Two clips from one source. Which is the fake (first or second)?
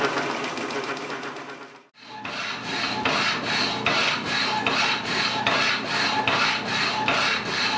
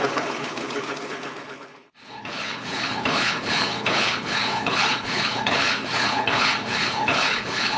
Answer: second